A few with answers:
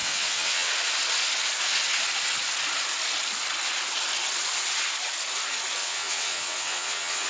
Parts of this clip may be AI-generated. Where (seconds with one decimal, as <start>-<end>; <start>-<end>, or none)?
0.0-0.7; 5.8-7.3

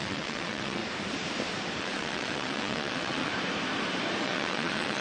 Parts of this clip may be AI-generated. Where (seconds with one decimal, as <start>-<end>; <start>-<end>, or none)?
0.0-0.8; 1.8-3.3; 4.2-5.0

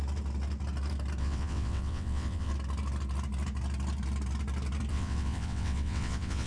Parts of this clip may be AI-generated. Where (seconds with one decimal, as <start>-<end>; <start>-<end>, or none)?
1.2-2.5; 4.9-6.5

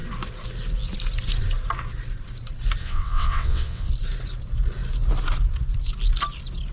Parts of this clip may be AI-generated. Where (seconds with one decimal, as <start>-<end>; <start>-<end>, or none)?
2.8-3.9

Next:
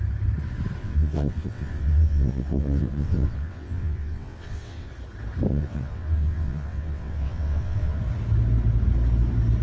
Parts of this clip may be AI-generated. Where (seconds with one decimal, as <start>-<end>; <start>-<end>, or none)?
0.8-4.9; 5.5-8.0

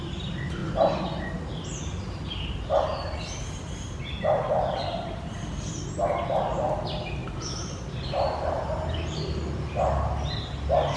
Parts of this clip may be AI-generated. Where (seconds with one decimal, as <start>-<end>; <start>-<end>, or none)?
none

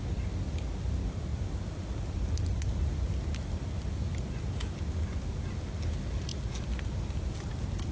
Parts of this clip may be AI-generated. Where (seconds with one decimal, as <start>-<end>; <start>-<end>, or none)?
none